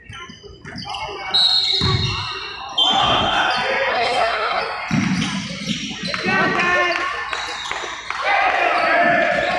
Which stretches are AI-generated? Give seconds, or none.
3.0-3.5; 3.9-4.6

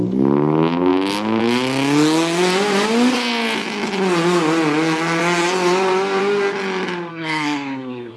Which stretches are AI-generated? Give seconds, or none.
7.1-8.2

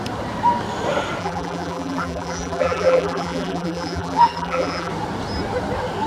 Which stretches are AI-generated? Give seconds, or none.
1.2-4.9

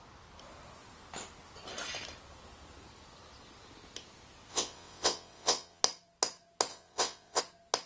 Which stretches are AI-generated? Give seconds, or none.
4.5-5.8; 6.7-7.4

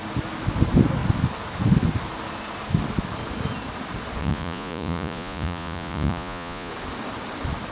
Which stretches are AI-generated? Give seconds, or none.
4.2-6.7